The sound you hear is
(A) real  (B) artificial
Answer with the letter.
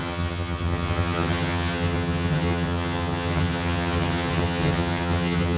B